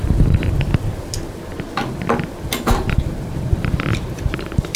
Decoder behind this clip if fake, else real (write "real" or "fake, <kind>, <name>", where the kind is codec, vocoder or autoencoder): real